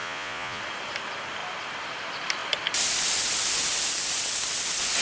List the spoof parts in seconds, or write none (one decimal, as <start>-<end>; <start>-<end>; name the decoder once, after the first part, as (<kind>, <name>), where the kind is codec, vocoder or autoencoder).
0.0-0.6 (vocoder, Vocos)